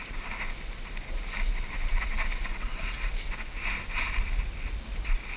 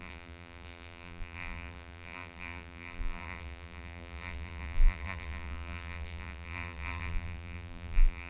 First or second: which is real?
first